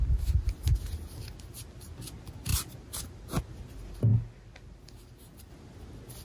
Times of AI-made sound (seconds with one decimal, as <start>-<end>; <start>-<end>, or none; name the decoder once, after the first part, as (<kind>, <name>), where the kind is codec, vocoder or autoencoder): none